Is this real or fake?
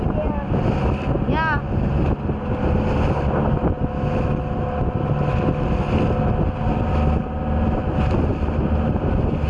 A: real